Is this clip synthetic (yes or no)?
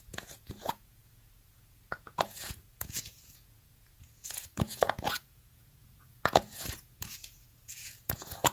yes